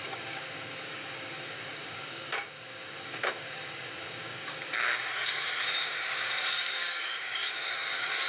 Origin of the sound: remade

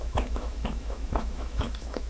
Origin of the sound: remade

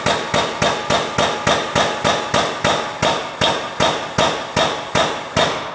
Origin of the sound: recorded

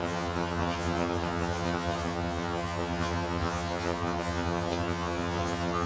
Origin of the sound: remade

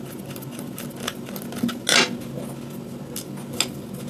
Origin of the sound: recorded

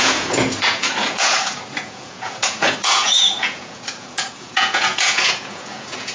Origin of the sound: remade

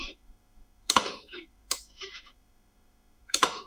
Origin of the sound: remade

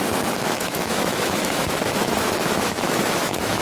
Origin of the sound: remade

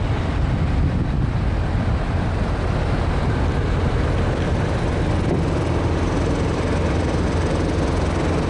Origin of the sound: recorded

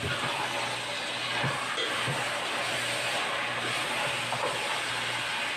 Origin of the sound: recorded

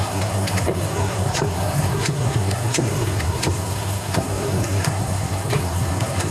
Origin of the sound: remade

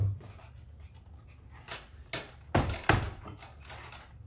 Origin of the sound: recorded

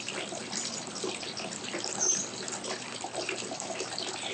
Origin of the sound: recorded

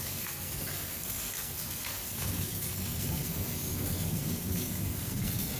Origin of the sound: remade